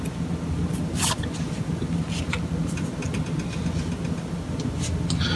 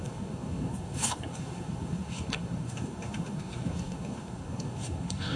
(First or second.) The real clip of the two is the first